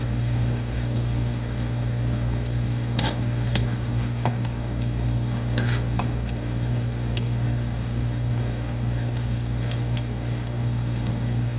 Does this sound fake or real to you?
fake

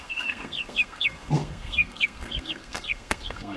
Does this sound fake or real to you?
fake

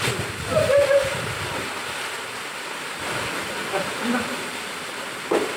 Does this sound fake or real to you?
real